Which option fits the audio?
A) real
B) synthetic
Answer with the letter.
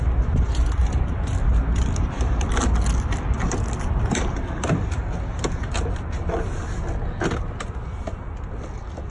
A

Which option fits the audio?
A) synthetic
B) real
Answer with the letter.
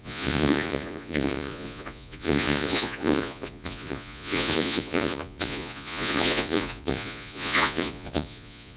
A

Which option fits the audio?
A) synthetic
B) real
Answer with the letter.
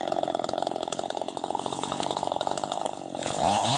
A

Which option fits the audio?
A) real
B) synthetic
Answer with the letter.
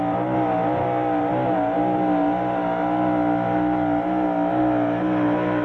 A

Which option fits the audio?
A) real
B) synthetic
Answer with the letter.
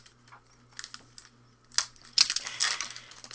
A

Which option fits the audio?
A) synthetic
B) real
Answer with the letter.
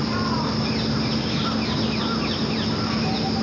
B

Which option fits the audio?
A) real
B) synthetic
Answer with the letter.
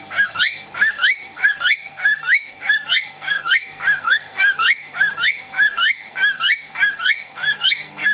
B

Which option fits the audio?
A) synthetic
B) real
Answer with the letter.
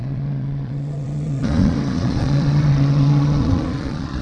A